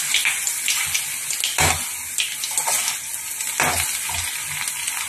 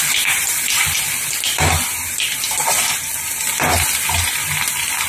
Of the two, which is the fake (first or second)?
second